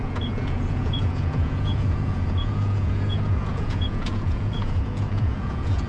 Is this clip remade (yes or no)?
yes